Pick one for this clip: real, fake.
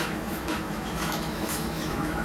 fake